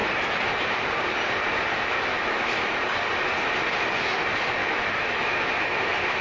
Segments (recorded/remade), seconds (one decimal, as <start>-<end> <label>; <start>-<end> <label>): 0.0-2.1 recorded; 2.1-2.8 remade; 2.8-4.6 recorded; 4.6-5.3 remade; 5.3-6.2 recorded